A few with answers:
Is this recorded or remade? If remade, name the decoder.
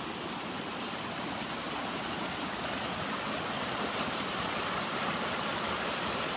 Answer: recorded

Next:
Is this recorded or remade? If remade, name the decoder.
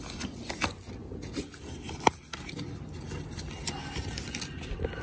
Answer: recorded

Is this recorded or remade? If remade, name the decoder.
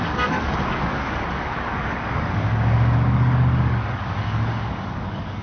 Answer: remade, codec, DAC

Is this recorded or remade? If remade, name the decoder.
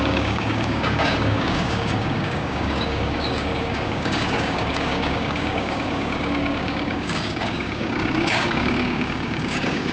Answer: remade, codec, DAC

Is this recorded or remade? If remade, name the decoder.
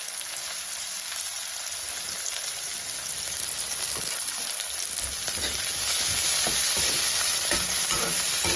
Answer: recorded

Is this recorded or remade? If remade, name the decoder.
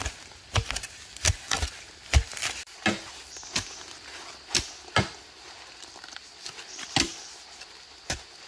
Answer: recorded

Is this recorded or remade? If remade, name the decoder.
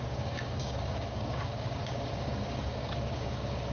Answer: remade, codec, DAC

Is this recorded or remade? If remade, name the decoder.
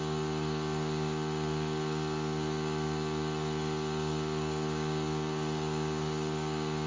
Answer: remade, codec, DAC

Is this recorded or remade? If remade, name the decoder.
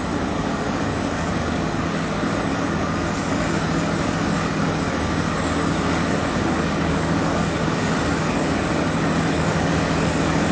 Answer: remade, codec, DAC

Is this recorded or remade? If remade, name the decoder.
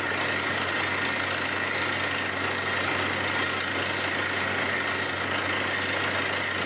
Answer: recorded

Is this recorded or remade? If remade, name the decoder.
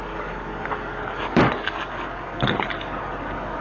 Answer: remade, codec, DAC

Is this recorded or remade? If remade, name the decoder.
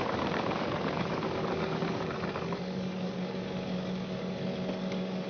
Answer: remade, codec, DAC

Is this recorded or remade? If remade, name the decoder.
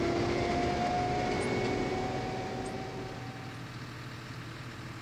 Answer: recorded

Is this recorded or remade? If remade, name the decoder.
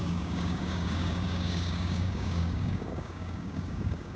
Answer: remade, codec, DAC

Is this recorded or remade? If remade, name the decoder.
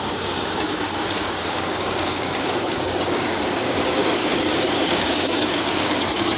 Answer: remade, codec, DAC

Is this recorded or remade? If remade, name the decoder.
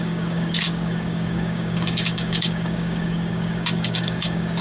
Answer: remade, codec, DAC